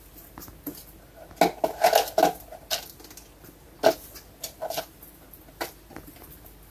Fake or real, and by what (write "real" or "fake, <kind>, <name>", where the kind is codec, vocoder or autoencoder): real